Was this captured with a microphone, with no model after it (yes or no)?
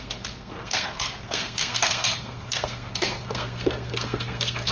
no